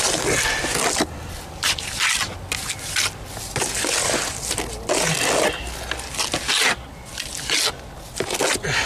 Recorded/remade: recorded